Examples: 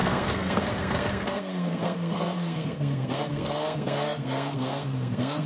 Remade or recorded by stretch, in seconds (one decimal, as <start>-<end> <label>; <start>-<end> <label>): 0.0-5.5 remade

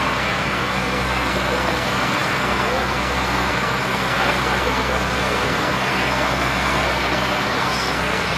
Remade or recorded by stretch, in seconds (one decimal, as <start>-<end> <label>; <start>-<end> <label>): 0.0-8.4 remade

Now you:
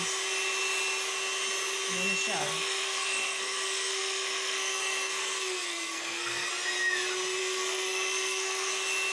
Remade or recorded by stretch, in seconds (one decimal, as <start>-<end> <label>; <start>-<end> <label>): 0.0-2.4 recorded; 2.4-6.5 remade; 6.5-7.4 recorded; 7.4-8.7 remade; 8.7-9.1 recorded